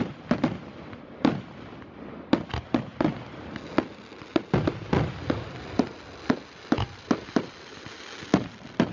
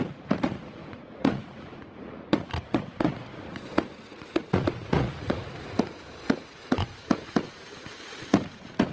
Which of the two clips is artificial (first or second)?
second